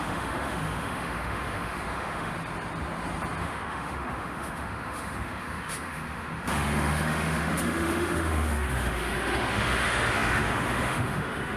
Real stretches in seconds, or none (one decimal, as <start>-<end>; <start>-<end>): 2.3-3.4